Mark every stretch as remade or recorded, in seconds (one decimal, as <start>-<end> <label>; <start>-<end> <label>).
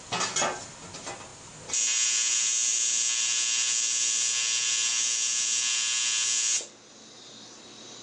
0.0-8.0 recorded